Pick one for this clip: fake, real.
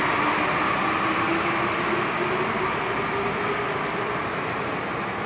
real